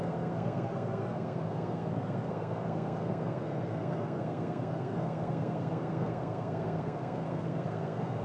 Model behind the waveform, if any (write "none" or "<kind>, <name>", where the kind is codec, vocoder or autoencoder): codec, SNAC